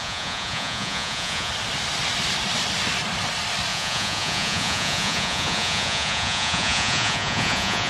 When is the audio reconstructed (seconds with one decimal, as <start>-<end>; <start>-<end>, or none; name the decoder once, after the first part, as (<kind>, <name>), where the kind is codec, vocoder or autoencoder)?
0.0-1.5 (vocoder, Vocos); 3.7-7.9